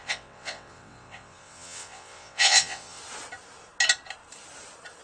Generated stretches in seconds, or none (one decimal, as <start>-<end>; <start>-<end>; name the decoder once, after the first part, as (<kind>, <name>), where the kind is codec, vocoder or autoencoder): 0.0-3.0 (vocoder, WaveNeXt)